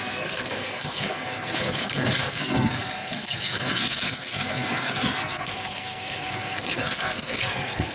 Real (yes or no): no